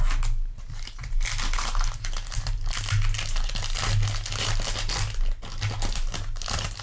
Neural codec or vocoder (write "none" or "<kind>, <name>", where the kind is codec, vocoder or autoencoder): none